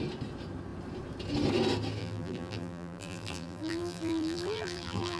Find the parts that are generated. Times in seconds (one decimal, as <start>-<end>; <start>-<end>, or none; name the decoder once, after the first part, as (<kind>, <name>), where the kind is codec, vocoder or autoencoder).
2.0-5.2 (vocoder, BigVGAN v2)